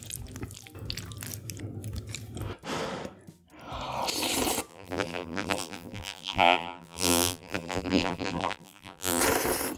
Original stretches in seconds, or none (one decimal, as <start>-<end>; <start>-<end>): 0.0-4.7; 9.2-9.8